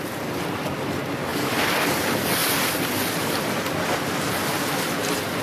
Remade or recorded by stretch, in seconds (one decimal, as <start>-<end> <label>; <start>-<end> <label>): 0.0-5.4 recorded